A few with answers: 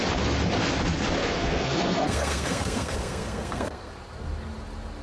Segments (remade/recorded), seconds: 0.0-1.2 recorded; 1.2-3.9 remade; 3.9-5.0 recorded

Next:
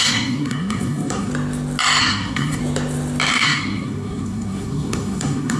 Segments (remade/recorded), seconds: 0.0-1.3 remade; 1.3-2.0 recorded; 2.0-2.6 remade; 2.6-3.3 recorded; 3.3-5.6 remade

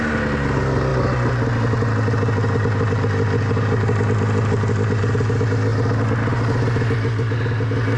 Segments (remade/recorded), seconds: 0.0-8.0 recorded

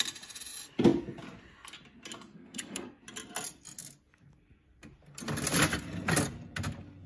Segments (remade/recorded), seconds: 0.0-2.3 recorded; 2.3-3.0 remade; 3.0-7.1 recorded

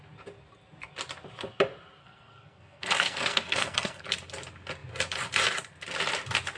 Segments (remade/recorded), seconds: 0.0-2.0 recorded; 2.0-4.0 remade; 4.0-6.6 recorded

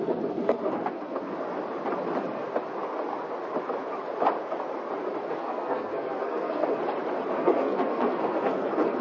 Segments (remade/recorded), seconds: 0.0-1.3 remade; 1.3-5.3 recorded; 5.3-6.8 remade; 6.8-7.3 recorded; 7.3-9.0 remade

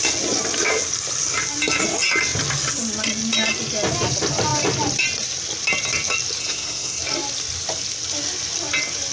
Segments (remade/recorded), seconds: 0.0-6.4 recorded; 6.4-7.0 remade; 7.0-9.1 recorded

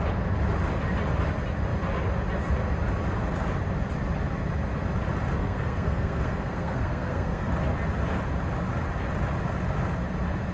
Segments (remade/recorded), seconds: 0.0-5.4 recorded; 5.4-7.5 remade; 7.5-10.5 recorded